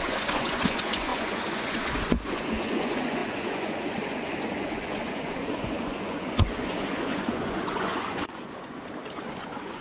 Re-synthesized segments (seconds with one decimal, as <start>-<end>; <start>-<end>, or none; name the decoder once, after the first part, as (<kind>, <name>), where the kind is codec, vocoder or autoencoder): 0.0-9.8 (vocoder, Vocos)